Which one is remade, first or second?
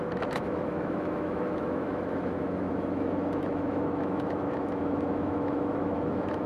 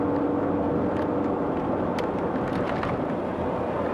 first